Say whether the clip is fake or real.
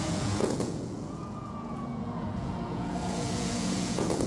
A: fake